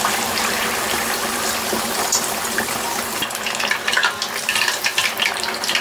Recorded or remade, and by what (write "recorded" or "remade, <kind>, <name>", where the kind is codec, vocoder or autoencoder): remade, vocoder, BigVGAN v2